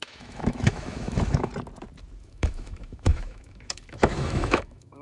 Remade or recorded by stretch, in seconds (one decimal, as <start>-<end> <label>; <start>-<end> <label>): 0.0-1.5 remade; 1.5-2.2 recorded; 2.2-5.0 remade